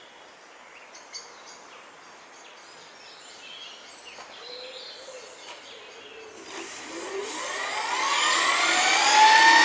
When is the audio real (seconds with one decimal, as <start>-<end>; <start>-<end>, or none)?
0.0-9.6